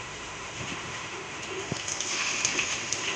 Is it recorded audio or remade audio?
remade